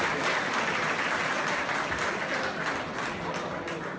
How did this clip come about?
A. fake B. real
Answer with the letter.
B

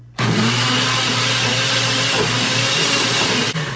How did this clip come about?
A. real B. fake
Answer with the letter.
A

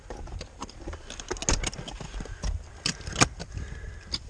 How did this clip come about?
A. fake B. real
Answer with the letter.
B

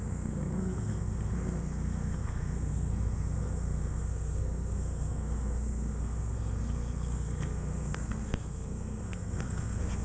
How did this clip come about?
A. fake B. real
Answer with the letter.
A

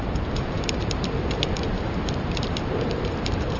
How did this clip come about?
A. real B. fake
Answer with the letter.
B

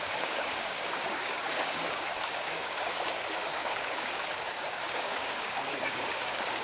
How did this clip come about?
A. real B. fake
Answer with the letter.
B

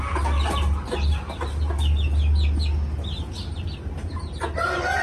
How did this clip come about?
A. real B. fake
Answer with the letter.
A